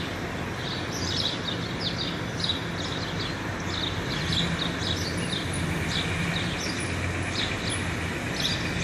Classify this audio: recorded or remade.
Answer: recorded